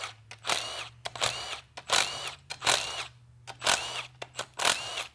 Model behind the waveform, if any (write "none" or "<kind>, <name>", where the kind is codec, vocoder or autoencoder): none